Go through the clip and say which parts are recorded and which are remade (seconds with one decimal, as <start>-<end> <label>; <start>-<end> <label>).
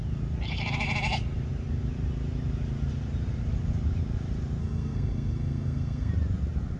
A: 0.0-4.6 recorded; 4.6-6.1 remade; 6.1-6.8 recorded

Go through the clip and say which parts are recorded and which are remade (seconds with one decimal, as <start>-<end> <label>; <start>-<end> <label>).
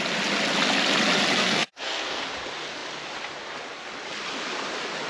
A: 0.0-1.4 recorded; 1.4-2.2 remade; 2.2-5.1 recorded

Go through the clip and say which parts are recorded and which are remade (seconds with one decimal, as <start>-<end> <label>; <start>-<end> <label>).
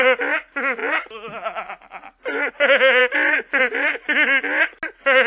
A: 0.0-5.3 recorded